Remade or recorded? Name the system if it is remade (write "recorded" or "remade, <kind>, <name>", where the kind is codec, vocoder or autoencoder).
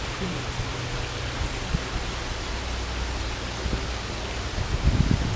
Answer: recorded